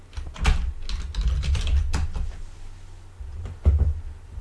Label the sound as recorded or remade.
recorded